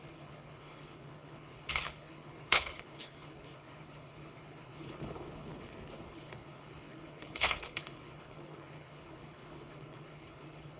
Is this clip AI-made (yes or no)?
yes